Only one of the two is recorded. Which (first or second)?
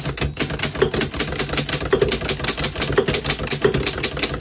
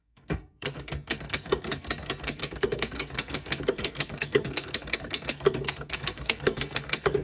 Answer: first